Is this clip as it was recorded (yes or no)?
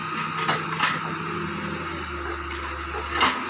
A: yes